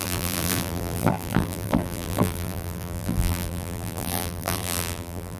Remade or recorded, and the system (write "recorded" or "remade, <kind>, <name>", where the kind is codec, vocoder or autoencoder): remade, vocoder, BigVGAN v2